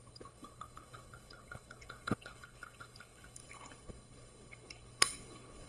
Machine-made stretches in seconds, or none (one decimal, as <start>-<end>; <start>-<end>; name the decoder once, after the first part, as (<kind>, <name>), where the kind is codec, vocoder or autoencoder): 0.0-5.7 (codec, HILCodec)

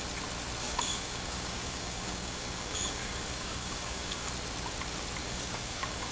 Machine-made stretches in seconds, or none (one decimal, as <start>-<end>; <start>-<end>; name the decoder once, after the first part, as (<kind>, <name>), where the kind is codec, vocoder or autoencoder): 0.6-4.3 (codec, DAC); 5.2-6.1

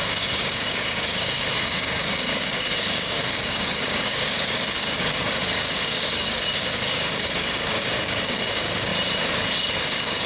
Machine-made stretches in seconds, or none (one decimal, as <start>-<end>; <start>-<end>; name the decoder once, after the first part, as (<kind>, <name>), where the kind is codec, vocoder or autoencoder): 0.0-8.9 (codec, DAC); 9.6-10.3

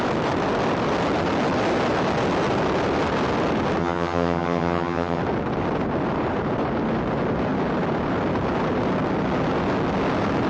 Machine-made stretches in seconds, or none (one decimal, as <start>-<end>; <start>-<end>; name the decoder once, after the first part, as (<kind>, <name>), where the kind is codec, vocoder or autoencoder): 3.8-5.2 (vocoder, HiFi-GAN)